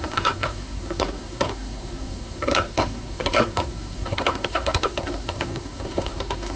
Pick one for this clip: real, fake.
fake